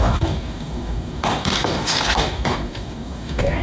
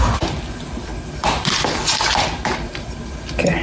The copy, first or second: first